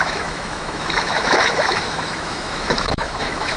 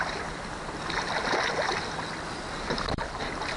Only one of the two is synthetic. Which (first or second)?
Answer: first